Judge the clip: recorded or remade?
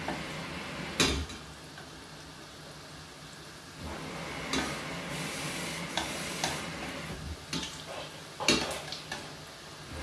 recorded